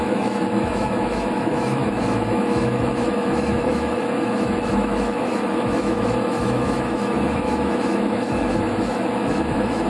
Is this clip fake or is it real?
fake